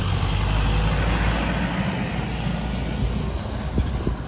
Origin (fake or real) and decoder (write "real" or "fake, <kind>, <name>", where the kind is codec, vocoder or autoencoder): real